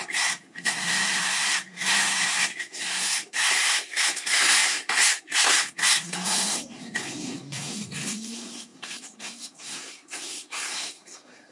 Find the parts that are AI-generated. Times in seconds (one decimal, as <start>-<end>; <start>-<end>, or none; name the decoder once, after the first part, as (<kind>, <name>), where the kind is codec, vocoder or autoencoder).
0.0-11.5 (codec, SNAC)

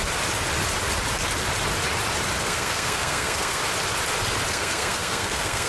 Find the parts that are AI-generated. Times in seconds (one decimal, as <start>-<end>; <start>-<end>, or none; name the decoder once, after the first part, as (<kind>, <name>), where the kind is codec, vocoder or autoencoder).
2.4-3.6 (codec, SNAC); 4.5-5.7

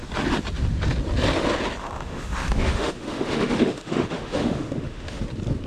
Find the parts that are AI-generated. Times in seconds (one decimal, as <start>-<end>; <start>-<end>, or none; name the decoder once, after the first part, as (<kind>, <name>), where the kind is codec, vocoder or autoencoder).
1.8-5.2 (autoencoder, DAC-VAE)

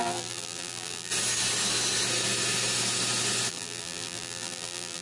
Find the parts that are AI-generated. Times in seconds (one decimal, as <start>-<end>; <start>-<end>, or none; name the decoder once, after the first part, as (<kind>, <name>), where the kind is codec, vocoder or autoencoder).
0.0-1.1 (vocoder, BigVGAN v2); 3.5-5.0